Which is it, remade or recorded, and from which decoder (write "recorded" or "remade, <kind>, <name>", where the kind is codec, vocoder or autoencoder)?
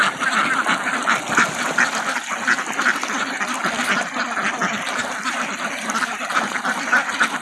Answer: recorded